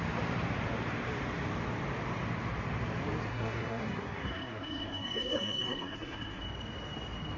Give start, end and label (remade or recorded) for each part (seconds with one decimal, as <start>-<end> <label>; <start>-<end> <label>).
0.0-3.3 recorded; 3.3-6.4 remade; 6.4-7.4 recorded